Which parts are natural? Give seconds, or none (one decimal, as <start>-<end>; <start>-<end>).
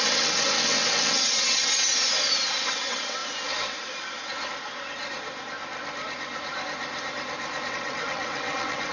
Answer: 1.9-2.7; 3.2-7.7